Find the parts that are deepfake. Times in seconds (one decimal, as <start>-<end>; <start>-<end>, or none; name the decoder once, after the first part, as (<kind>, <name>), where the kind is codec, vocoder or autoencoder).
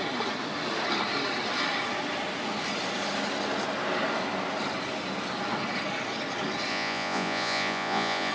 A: 6.7-8.3 (vocoder, Vocos)